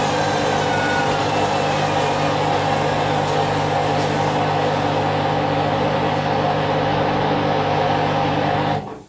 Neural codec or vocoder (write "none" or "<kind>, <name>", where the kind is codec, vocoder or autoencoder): none